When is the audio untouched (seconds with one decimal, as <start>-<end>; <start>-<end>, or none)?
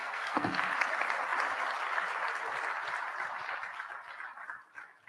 0.7-5.1